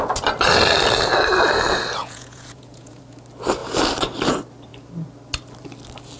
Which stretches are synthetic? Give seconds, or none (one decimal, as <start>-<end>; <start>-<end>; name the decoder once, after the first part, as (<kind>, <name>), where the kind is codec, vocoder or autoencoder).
2.0-3.0 (vocoder, Vocos)